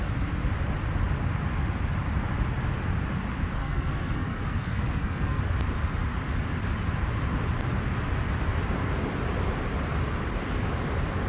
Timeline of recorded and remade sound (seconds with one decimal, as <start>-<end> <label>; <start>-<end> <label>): 0.0-3.6 recorded; 3.6-5.4 remade; 5.4-11.3 recorded